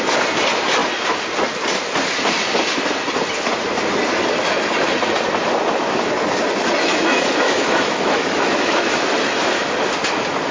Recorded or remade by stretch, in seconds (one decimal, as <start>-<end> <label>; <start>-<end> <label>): 0.0-6.9 recorded; 6.9-9.7 remade; 9.7-10.5 recorded